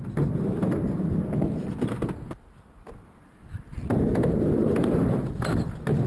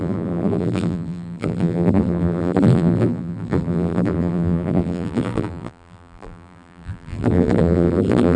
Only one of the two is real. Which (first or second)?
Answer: first